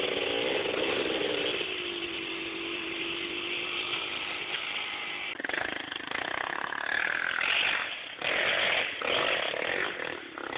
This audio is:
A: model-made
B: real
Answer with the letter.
B